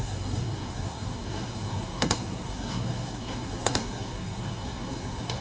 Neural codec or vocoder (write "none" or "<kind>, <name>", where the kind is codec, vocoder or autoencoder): codec, SNAC